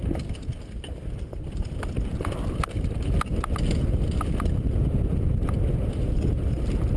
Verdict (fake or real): real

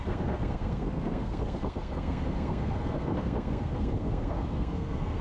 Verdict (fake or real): fake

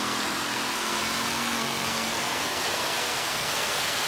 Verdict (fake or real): fake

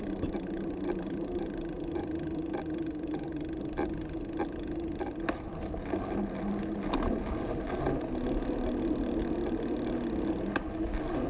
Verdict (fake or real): real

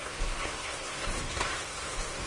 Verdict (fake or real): fake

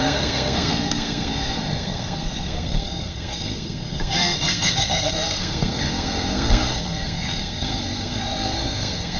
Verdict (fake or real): fake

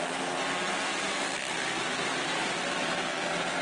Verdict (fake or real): real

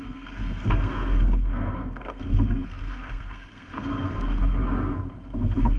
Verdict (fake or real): fake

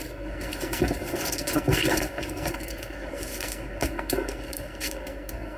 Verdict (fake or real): fake